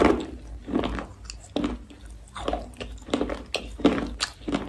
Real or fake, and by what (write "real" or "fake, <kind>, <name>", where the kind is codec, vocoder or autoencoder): real